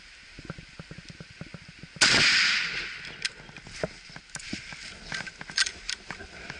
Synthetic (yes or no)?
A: no